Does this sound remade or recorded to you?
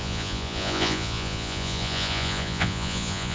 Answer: remade